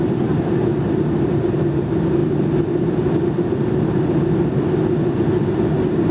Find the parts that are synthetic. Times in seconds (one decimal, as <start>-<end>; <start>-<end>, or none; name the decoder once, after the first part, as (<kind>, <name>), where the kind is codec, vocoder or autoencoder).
none